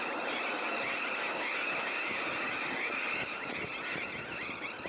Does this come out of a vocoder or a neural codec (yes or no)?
no